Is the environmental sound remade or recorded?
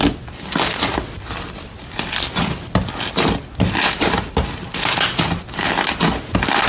recorded